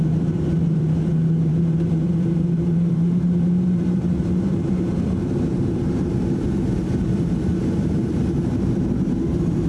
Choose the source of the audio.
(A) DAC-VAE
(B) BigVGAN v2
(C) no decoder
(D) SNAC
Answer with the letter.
B